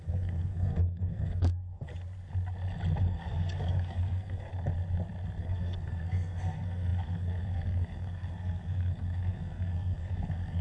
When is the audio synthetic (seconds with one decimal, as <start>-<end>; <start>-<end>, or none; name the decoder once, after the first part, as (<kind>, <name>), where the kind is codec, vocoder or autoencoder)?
0.0-1.9 (codec, SNAC); 3.0-4.5; 5.4-10.6